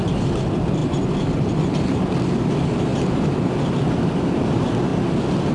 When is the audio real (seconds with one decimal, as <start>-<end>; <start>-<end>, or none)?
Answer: 0.0-5.5